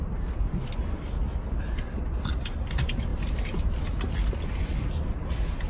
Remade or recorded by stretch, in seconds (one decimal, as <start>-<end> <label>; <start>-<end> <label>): 0.0-3.1 recorded; 3.1-3.6 remade; 3.6-5.7 recorded